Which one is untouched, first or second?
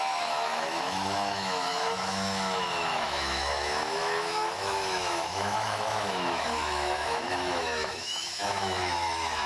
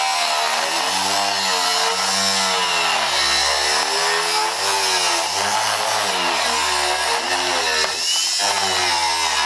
second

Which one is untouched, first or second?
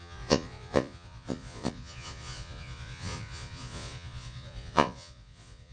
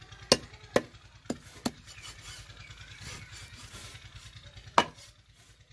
second